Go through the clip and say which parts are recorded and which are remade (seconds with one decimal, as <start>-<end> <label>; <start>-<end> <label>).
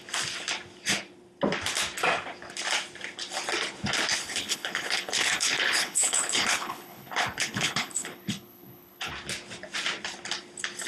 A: 0.0-4.2 recorded; 4.2-9.1 remade; 9.1-10.9 recorded